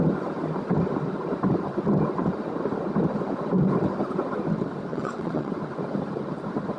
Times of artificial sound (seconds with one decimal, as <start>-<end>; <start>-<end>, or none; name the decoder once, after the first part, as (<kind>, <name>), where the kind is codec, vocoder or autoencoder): 4.9-5.5 (vocoder, WaveNeXt)